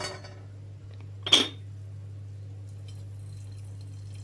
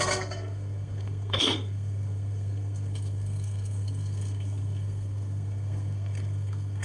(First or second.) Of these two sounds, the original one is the first